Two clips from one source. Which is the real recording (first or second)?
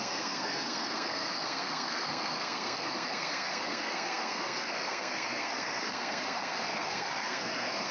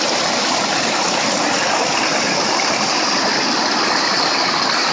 second